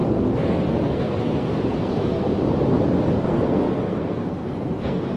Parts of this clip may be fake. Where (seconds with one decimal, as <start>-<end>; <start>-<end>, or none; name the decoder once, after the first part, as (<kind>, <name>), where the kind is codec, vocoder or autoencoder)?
0.0-2.3 (codec, SNAC); 3.2-5.2